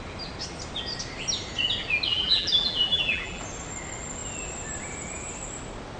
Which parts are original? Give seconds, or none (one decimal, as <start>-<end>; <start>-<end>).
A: 0.0-2.1; 3.4-6.0